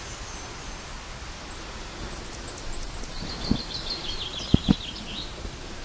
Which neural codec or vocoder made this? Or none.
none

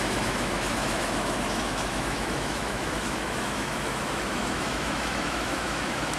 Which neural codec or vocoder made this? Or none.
autoencoder, DAC-VAE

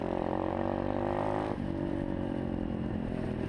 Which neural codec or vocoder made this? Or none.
vocoder, BigVGAN v2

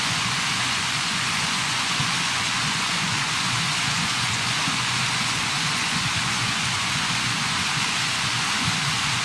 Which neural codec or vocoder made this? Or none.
vocoder, Vocos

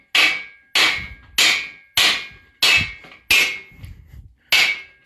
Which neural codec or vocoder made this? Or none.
none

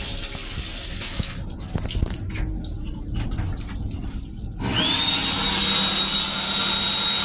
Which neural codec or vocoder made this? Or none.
none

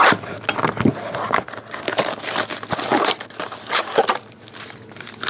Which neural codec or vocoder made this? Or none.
none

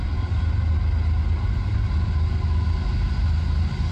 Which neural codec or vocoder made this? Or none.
none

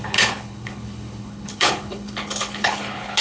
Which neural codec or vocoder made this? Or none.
codec, HILCodec